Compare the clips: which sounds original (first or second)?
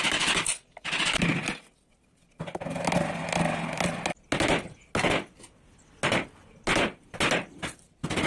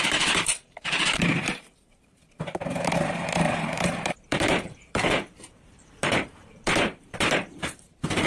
first